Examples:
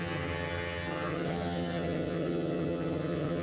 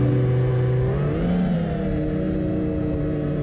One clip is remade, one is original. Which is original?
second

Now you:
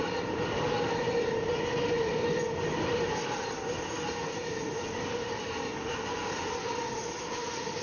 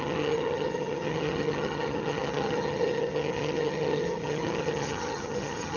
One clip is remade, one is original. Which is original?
first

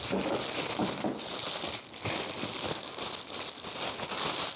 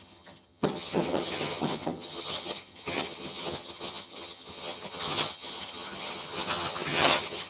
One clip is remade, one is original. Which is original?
first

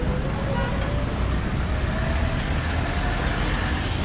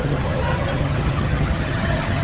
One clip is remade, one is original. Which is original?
first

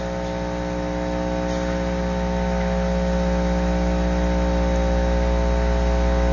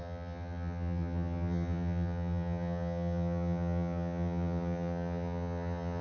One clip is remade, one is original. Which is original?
first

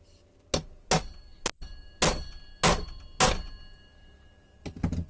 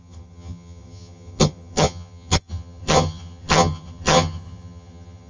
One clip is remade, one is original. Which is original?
first